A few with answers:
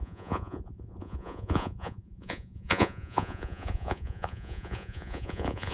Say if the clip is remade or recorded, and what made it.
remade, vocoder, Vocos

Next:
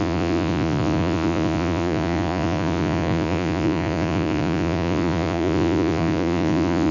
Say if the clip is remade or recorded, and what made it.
remade, vocoder, Vocos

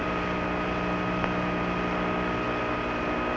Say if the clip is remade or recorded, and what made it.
recorded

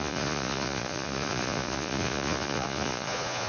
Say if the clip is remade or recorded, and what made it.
remade, vocoder, Vocos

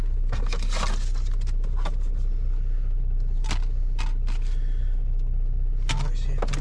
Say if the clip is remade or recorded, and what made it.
recorded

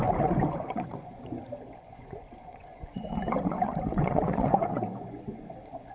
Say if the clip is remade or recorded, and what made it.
remade, vocoder, Vocos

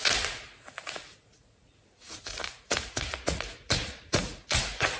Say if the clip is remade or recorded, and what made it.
remade, vocoder, Vocos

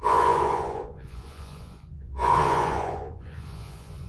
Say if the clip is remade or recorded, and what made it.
remade, vocoder, Vocos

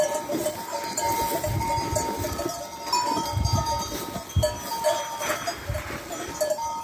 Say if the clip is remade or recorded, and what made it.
recorded